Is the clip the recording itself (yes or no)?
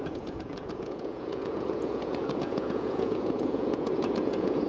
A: no